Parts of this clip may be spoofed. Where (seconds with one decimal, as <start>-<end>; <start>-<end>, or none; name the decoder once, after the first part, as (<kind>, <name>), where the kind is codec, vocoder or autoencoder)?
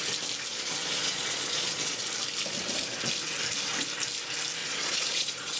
0.5-2.0 (vocoder, Vocos); 4.6-5.6